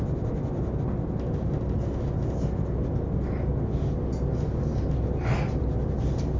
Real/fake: real